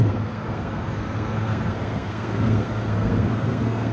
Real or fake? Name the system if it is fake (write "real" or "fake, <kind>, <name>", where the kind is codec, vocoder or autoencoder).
fake, codec, SNAC